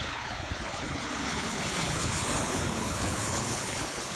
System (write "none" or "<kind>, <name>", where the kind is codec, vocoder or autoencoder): codec, HILCodec